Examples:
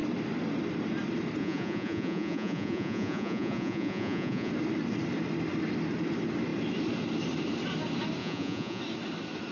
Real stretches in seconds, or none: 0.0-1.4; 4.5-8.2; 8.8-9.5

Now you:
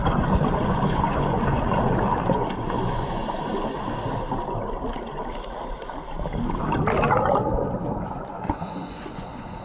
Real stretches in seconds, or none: 3.2-8.1

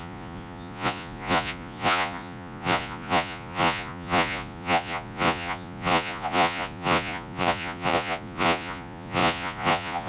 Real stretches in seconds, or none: none